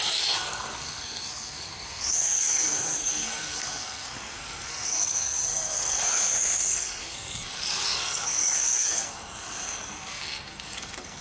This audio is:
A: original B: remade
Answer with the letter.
B